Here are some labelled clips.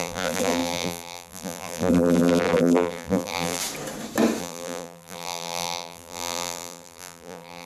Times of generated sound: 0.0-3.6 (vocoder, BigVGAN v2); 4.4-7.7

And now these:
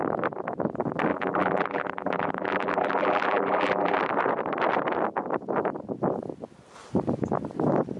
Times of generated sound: 1.1-4.0 (vocoder, BigVGAN v2)